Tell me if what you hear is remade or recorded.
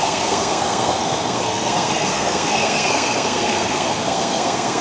remade